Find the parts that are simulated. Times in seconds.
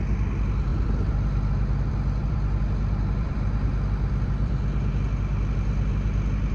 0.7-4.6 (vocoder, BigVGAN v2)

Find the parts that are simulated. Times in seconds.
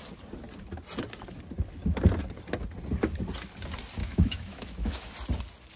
4.0-5.1 (autoencoder, DAC-VAE)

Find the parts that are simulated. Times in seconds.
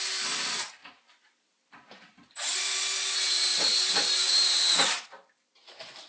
3.5-5.5 (vocoder, BigVGAN v2)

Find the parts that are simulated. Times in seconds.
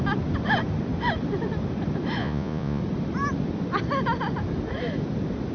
2.2-2.8 (vocoder, Vocos)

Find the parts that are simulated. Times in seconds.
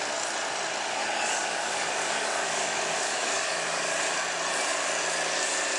1.0-4.0 (codec, DAC)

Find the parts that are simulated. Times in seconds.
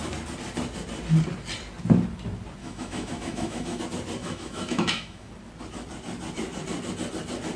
2.6-3.8 (autoencoder, DAC-VAE); 4.2-5.3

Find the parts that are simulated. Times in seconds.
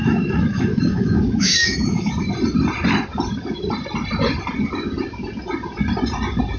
0.0-2.1 (autoencoder, DAC-VAE)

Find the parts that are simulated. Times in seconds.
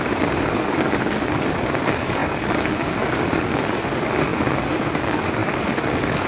0.0-6.3 (codec, DAC)